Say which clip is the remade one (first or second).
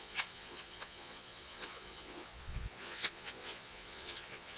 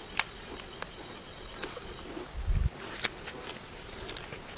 first